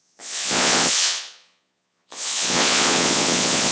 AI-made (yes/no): yes